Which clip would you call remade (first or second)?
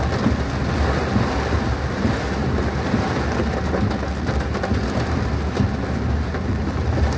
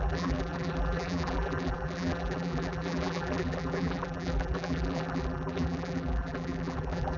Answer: second